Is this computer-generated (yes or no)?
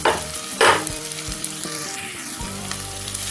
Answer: yes